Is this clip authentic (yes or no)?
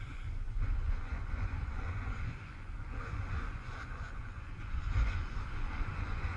no